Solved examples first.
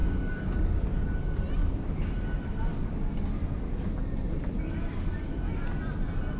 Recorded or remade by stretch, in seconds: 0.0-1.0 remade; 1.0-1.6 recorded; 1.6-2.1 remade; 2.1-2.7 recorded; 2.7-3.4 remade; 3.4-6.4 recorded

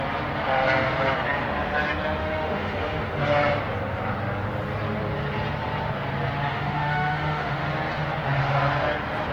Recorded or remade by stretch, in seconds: 0.0-2.2 recorded; 2.2-3.1 remade; 3.1-6.5 recorded; 6.5-7.7 remade; 7.7-9.3 recorded

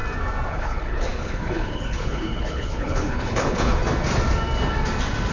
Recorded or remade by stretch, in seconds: 0.0-0.5 recorded; 0.5-3.8 remade; 3.8-5.3 recorded

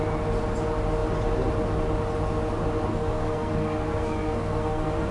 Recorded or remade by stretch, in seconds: 0.0-2.9 recorded; 2.9-5.1 remade

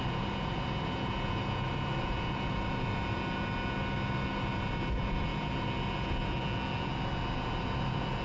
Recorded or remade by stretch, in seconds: 0.0-8.2 recorded